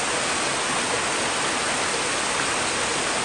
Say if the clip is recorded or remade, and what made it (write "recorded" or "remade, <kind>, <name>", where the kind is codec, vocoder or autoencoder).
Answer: recorded